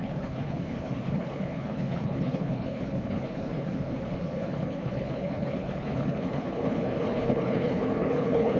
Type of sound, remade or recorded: remade